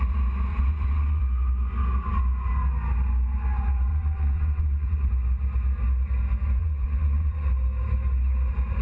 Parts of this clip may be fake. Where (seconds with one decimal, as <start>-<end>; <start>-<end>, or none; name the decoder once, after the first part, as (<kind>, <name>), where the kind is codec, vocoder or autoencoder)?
0.5-1.2 (vocoder, WaveNeXt); 3.9-5.1; 6.6-7.5

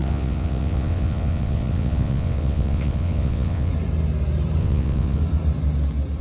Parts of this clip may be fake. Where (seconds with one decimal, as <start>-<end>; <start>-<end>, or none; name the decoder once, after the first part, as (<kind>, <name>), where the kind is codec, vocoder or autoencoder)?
0.0-3.7 (vocoder, WaveNeXt); 4.6-5.2

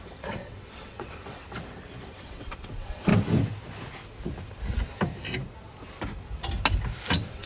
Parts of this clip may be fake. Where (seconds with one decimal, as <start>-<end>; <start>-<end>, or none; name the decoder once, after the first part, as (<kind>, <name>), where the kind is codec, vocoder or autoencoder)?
0.0-1.4 (vocoder, WaveNeXt); 2.0-3.1; 7.1-7.5

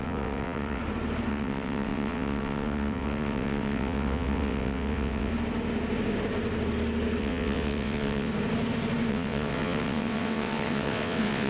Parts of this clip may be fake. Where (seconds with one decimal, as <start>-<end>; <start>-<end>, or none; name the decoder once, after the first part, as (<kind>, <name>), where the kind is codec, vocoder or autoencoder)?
0.0-0.8 (vocoder, WaveNeXt); 1.3-5.3; 7.2-8.3; 9.1-11.5

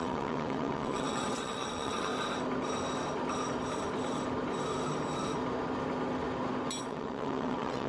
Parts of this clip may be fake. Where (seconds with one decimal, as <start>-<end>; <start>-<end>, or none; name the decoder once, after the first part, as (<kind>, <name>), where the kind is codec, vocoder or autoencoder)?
0.0-2.1 (vocoder, WaveNeXt); 6.8-7.9